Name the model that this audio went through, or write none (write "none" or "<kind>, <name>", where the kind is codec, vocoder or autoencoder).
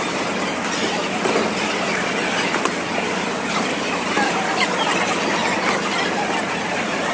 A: none